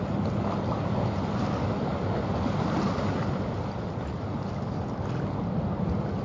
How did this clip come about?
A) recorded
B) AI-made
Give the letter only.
A